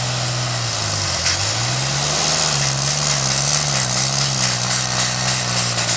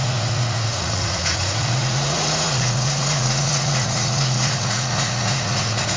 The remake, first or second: second